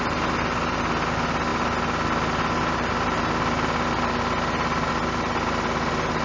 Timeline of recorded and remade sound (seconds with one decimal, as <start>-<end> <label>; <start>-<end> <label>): 0.0-6.2 recorded